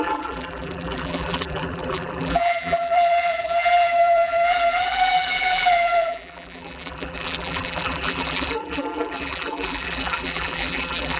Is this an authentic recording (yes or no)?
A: no